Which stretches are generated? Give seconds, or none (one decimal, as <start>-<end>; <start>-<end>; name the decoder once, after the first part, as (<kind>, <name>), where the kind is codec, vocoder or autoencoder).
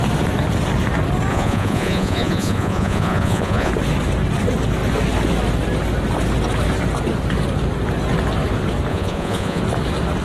1.3-3.7 (vocoder, Vocos); 8.9-9.6